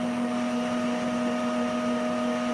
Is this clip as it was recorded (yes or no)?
yes